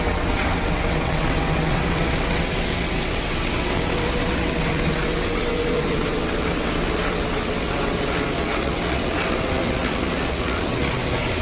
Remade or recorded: remade